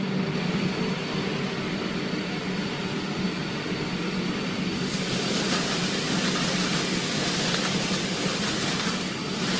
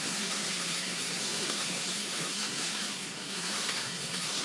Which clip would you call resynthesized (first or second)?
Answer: second